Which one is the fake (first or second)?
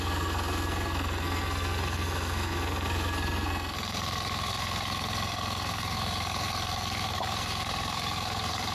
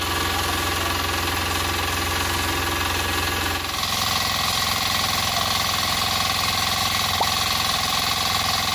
first